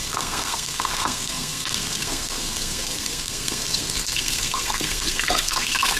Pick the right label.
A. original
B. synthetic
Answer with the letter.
B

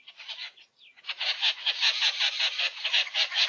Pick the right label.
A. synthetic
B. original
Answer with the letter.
A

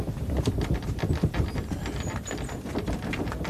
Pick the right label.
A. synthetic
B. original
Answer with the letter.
A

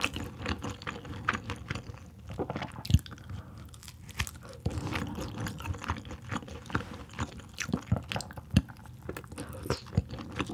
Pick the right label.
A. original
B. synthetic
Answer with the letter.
A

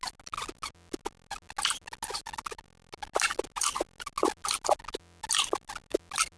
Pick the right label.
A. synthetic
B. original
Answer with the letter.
B